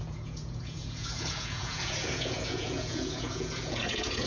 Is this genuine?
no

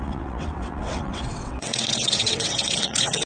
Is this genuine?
no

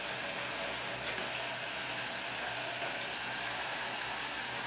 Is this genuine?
yes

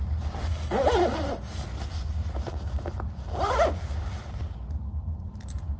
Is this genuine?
yes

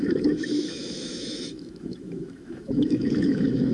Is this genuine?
no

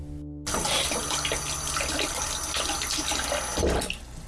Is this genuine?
yes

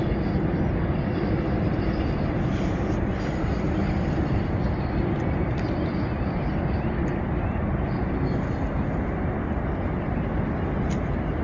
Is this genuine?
yes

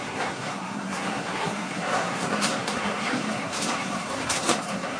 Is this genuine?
no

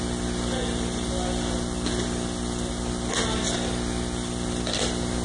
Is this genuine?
yes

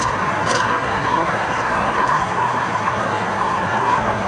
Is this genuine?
no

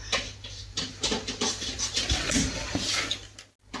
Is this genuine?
yes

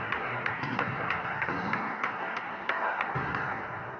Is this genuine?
no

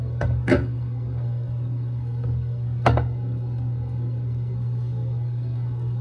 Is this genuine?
no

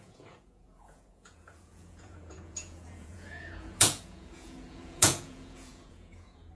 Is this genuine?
no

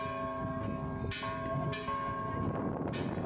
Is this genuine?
yes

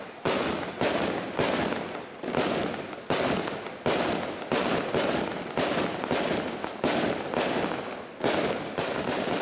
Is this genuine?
yes